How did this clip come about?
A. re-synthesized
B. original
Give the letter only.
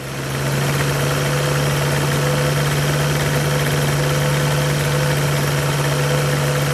B